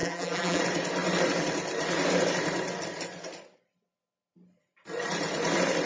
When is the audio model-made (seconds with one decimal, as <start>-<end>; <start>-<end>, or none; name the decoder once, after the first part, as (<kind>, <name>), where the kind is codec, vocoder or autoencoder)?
0.0-0.6 (vocoder, BigVGAN v2)